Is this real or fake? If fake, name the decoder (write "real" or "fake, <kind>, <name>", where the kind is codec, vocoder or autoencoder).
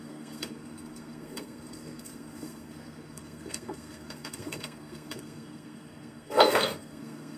fake, codec, SNAC